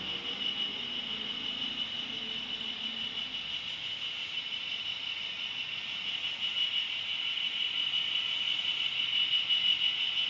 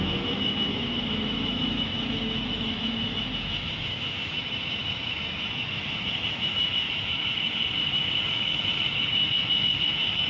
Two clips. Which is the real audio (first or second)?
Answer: first